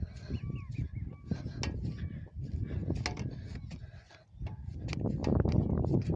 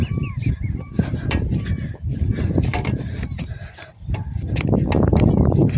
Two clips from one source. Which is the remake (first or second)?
second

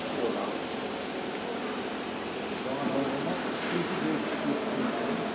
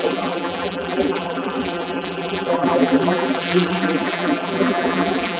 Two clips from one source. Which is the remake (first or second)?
second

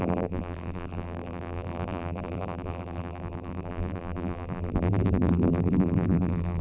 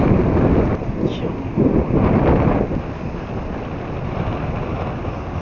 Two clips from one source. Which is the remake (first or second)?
first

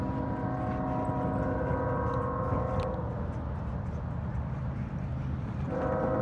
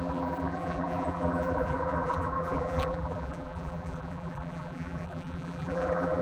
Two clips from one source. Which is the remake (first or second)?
second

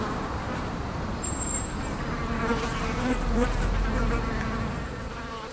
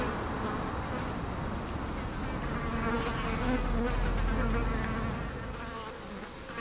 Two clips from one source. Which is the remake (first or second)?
first